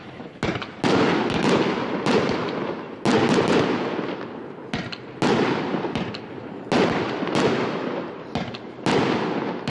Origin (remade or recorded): recorded